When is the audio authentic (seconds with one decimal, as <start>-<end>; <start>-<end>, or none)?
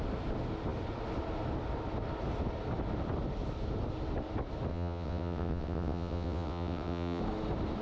0.0-4.7; 7.2-7.8